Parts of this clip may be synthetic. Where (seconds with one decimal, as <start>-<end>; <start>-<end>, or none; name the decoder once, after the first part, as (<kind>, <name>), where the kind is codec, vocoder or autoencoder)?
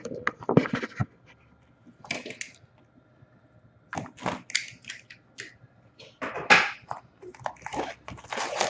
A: none